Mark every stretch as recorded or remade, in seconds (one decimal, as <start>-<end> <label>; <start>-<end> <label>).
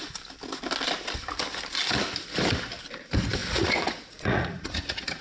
0.0-3.4 recorded; 3.4-5.2 remade